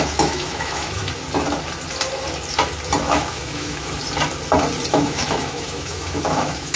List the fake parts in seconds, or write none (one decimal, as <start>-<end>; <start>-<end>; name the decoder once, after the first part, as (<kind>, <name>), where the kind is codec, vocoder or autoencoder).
0.0-1.0 (autoencoder, DAC-VAE); 3.0-4.0; 4.9-6.8